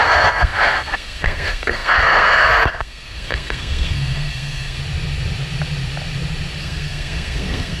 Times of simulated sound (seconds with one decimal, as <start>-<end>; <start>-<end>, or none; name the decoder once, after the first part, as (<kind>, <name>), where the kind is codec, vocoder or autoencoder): 0.0-4.8 (codec, SNAC); 6.6-7.8